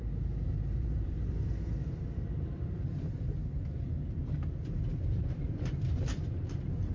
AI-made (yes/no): yes